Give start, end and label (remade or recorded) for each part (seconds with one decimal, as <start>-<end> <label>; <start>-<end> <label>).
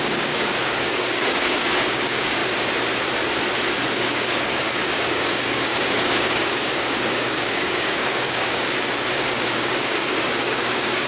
0.0-2.4 remade; 2.4-3.9 recorded; 3.9-11.1 remade